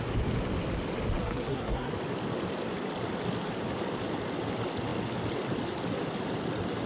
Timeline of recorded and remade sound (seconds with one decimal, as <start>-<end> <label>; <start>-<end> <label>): 0.0-1.2 recorded; 1.2-1.9 remade; 1.9-6.9 recorded